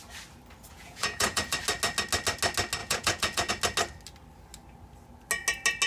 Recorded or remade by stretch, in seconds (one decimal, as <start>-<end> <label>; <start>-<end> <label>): 0.0-0.7 recorded; 0.7-1.4 remade; 1.4-2.8 recorded; 2.8-3.5 remade; 3.5-5.9 recorded